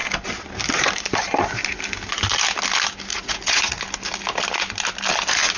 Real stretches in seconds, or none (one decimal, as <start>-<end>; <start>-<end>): 0.0-3.1; 3.8-5.6